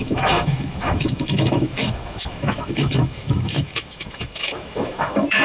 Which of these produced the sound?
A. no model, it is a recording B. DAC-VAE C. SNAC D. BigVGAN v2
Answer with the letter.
B